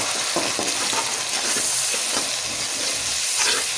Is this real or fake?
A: real